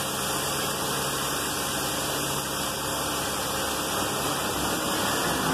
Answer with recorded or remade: recorded